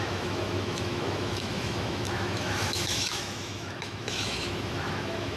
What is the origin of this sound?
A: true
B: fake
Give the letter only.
B